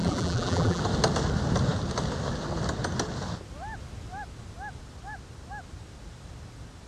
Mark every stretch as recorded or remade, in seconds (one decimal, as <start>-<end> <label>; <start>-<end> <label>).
0.0-0.8 remade; 0.8-6.9 recorded